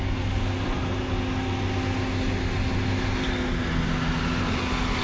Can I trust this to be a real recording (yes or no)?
yes